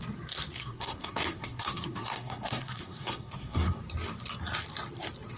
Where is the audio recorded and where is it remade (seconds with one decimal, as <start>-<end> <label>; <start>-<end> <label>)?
0.0-0.6 recorded; 0.6-3.8 remade; 3.8-5.4 recorded